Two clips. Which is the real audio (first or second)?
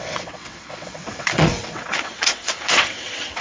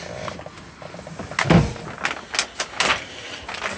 second